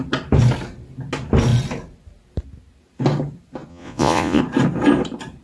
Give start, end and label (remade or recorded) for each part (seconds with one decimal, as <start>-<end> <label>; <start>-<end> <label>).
0.0-3.7 recorded; 3.7-4.4 remade; 4.4-5.4 recorded